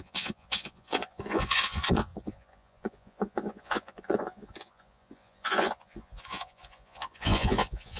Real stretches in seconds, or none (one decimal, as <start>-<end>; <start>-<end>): none